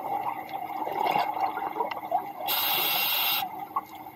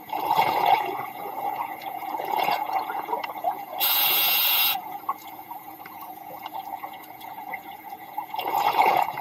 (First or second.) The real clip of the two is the first